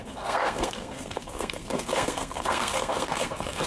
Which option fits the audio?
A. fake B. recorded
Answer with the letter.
A